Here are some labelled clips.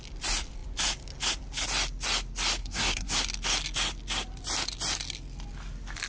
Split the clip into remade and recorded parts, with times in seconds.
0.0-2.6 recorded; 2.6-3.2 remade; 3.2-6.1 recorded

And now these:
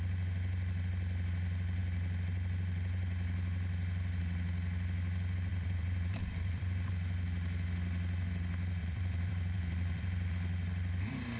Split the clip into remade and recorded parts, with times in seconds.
0.0-5.5 recorded; 5.5-6.9 remade; 6.9-8.8 recorded; 8.8-10.3 remade; 10.3-11.4 recorded

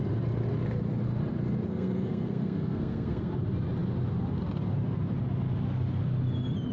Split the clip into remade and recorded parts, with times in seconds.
0.0-1.7 recorded; 1.7-3.3 remade; 3.3-6.7 recorded

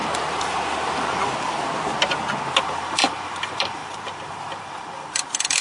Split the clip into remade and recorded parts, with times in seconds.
0.0-2.6 recorded; 2.6-5.6 remade